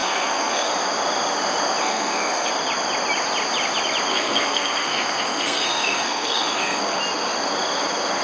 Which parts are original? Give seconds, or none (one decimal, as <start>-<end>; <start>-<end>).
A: 0.7-1.8; 2.5-4.1; 7.0-8.2